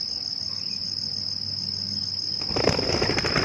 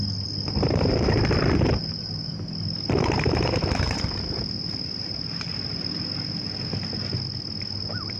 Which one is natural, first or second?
first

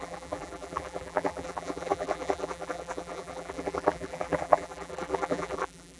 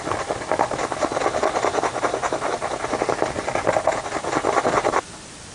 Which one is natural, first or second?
second